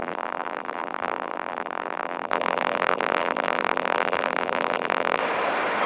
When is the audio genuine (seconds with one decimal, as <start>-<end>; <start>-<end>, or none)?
5.2-5.9